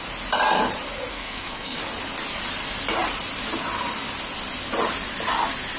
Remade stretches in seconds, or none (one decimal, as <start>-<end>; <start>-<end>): 1.1-1.8